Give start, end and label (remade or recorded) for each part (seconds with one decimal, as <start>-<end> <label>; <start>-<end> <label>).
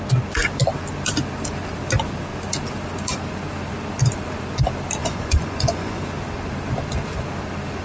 0.0-5.0 recorded; 5.0-6.0 remade; 6.0-7.8 recorded